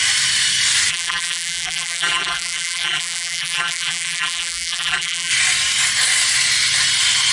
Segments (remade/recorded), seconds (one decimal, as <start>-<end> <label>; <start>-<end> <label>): 0.0-0.9 recorded; 0.9-5.3 remade; 5.3-7.3 recorded